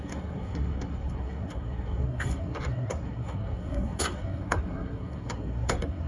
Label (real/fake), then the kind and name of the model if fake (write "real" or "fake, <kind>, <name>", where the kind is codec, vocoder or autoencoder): fake, codec, SNAC